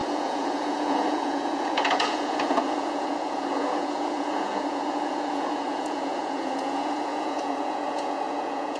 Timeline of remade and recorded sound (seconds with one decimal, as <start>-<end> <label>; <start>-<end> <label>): 0.0-8.8 remade